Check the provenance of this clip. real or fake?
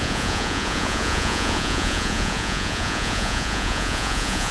fake